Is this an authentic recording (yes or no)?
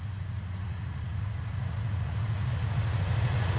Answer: no